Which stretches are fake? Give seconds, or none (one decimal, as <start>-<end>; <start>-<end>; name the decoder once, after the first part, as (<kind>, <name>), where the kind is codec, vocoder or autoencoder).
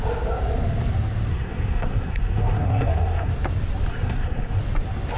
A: 1.3-3.3 (codec, SNAC); 3.9-4.6